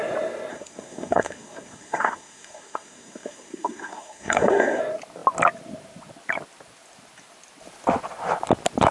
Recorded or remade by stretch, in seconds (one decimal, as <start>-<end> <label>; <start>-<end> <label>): 0.0-0.5 recorded; 0.5-4.8 remade; 4.8-8.9 recorded